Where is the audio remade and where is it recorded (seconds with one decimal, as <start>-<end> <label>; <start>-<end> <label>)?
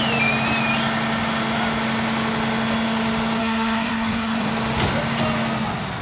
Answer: 0.0-3.4 recorded; 3.4-4.5 remade; 4.5-6.0 recorded